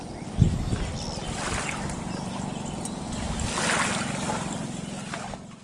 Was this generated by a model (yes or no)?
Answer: no